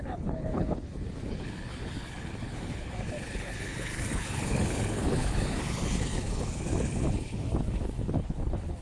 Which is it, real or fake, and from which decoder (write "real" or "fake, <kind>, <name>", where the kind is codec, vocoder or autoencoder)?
fake, codec, HILCodec